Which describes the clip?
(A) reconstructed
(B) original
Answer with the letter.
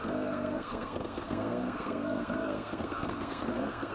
A